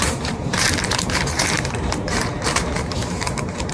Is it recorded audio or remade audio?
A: remade